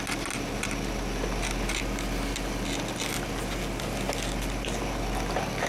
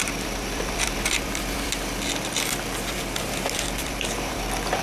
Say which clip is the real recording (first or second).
first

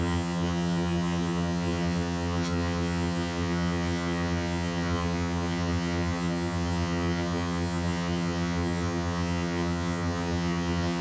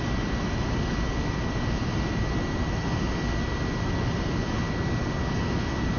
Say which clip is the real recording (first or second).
second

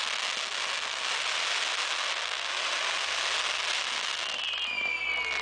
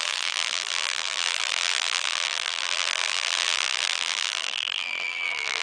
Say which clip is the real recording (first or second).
first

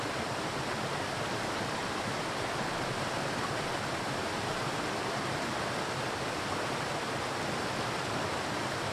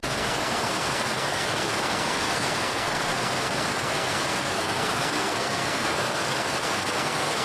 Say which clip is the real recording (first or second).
first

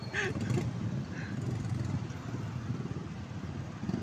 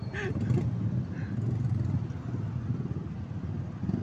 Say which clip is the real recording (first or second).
second